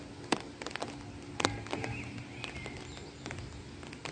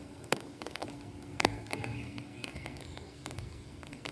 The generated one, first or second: second